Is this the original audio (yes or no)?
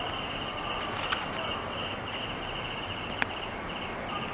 no